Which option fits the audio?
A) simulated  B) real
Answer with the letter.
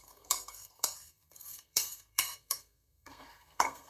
A